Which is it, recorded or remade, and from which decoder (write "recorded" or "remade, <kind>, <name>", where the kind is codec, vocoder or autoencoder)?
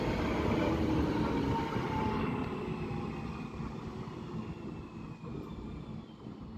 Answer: recorded